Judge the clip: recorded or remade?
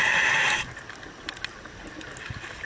recorded